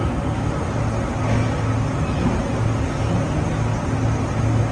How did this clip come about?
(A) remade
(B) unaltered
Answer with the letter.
B